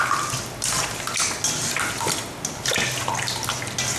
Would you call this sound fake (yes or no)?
no